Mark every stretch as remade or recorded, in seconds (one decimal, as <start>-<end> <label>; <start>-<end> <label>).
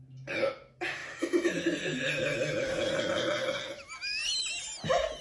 0.0-5.2 recorded